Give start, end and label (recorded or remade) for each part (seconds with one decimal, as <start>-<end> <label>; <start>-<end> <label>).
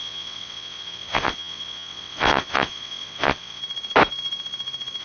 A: 0.0-3.6 remade; 3.6-5.0 recorded